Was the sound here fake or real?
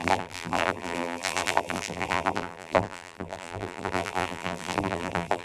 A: fake